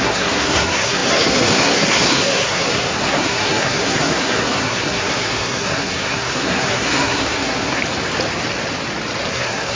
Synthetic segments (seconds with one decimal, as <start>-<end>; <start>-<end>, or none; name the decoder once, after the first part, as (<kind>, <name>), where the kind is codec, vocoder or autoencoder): 0.0-7.8 (codec, SNAC); 9.3-9.8